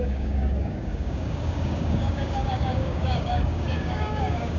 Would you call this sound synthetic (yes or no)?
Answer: yes